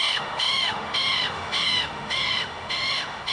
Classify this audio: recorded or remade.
remade